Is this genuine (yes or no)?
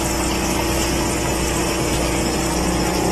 yes